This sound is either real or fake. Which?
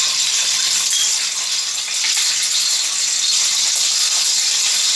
real